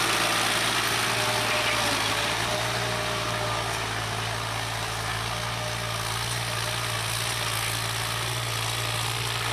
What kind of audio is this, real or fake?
real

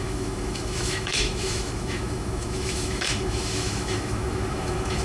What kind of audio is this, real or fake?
fake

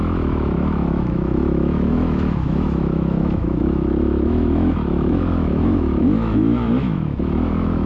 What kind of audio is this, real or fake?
fake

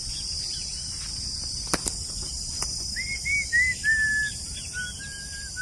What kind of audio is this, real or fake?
real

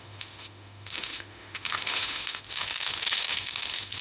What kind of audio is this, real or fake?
fake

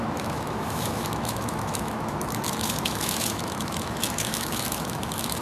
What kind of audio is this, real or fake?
fake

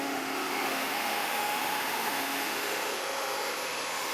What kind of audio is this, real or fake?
fake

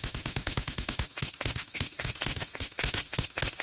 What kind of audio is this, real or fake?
fake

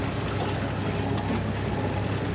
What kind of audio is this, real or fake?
real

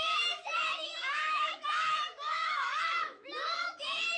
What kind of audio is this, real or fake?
fake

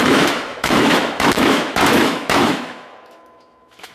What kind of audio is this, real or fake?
fake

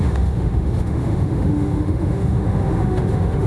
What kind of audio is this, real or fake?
fake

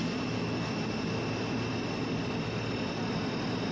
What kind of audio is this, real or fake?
real